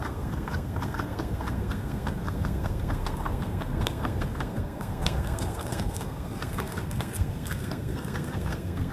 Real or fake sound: fake